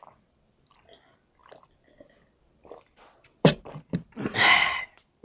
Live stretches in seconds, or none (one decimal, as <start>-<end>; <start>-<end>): 0.0-1.4; 4.5-5.2